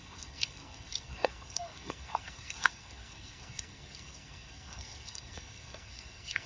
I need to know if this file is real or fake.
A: fake